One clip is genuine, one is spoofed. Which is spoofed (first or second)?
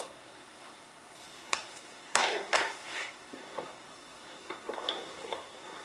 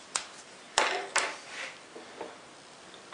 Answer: first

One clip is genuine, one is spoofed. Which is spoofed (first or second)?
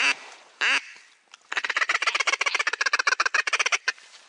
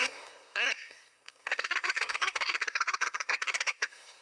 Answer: second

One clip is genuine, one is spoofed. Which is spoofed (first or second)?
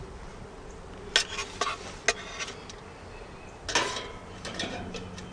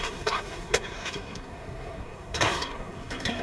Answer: second